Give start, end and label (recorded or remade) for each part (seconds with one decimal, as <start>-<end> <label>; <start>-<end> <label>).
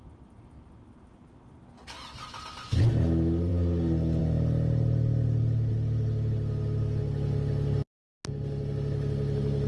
0.0-9.7 recorded